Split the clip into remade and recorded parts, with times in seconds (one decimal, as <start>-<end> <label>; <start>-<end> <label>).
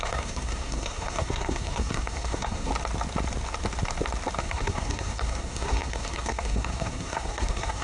0.0-2.7 remade; 2.7-4.4 recorded; 4.4-7.8 remade